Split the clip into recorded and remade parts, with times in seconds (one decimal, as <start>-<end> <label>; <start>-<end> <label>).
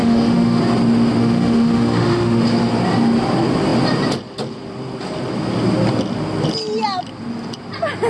0.0-0.6 remade; 0.6-1.2 recorded; 1.2-2.4 remade; 2.4-8.1 recorded